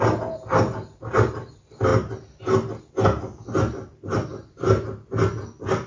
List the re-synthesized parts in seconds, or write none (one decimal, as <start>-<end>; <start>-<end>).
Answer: none